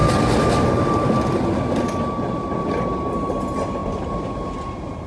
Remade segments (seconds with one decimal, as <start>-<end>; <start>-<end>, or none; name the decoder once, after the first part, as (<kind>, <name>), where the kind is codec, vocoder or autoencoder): none